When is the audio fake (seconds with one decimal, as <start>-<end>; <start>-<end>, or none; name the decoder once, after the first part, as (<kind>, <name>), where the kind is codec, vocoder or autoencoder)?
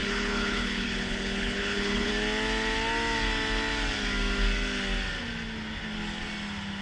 0.0-2.1 (codec, HILCodec)